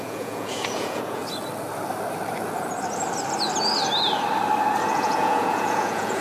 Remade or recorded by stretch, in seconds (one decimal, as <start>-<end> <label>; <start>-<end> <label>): 0.0-1.2 remade; 1.2-4.9 recorded; 4.9-6.2 remade